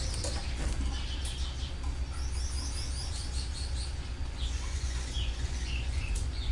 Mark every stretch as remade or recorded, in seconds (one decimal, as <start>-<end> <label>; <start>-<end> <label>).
0.0-4.2 recorded; 4.2-6.5 remade